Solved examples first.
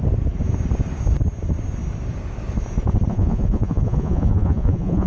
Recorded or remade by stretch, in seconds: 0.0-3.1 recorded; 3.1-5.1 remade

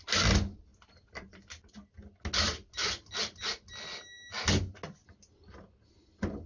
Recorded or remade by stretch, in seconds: 0.0-6.5 recorded

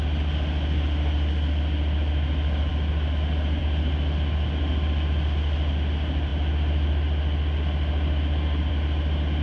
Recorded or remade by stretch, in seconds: 0.0-9.4 recorded